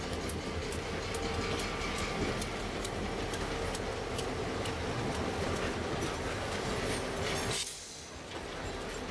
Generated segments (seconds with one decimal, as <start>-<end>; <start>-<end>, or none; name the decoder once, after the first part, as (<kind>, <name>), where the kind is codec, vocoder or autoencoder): none